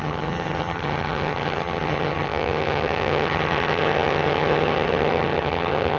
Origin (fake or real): fake